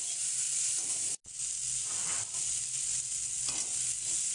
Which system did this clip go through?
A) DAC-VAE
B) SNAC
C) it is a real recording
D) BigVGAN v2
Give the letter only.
C